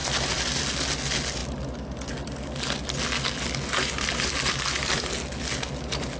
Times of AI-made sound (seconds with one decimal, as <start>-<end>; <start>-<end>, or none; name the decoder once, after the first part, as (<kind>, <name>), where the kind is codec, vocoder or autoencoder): none